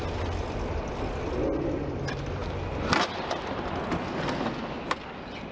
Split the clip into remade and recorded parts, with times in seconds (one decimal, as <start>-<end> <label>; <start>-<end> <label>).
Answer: 0.0-5.5 recorded